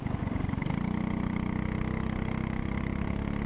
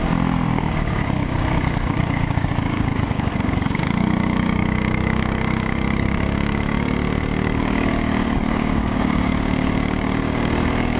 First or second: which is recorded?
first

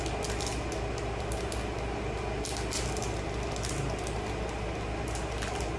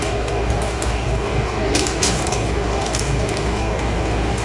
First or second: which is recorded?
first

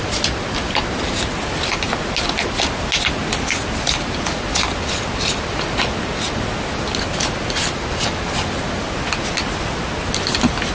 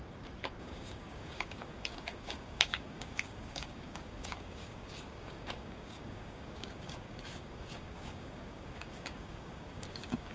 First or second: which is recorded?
first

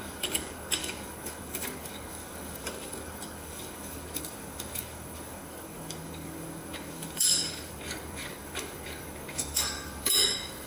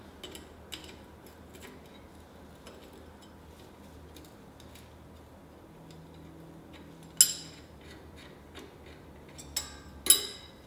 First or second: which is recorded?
second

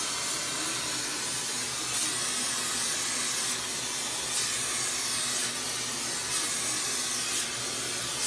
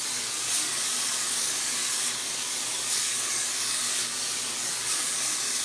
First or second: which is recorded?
first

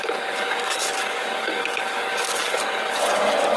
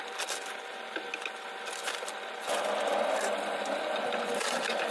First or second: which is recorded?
second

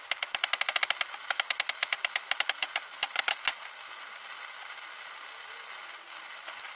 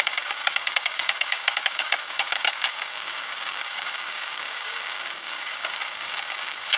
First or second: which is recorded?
first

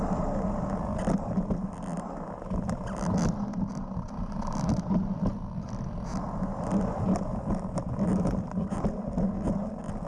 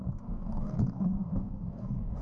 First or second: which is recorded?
first